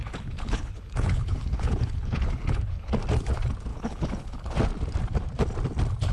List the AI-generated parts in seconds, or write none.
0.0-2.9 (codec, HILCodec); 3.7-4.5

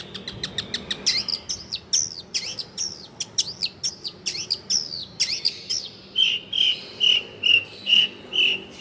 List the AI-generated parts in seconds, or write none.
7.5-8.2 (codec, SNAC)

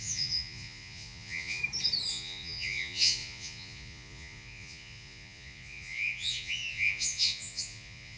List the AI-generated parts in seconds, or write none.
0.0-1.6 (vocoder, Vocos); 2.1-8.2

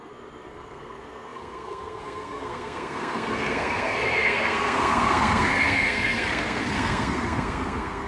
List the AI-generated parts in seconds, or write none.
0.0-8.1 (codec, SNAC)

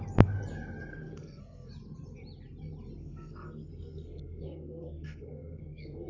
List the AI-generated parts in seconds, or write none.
0.9-1.7 (codec, SNAC); 3.0-6.1

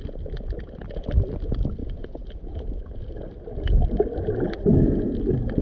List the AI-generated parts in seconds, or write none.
1.8-3.1 (vocoder, Vocos)